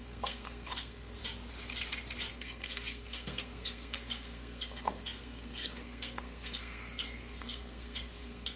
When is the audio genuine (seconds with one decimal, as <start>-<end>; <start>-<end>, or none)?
1.2-2.3